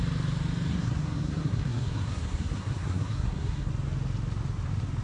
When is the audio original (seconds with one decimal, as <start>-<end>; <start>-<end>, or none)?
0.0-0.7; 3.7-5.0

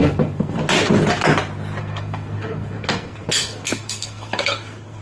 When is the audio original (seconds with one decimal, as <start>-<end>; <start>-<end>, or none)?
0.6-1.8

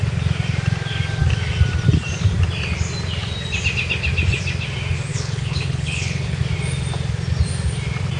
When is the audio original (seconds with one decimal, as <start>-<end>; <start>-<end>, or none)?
0.0-5.1; 6.4-8.2

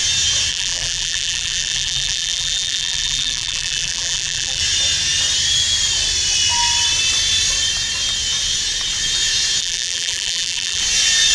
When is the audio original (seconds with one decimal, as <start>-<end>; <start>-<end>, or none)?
0.0-0.5; 4.6-9.6; 10.8-11.3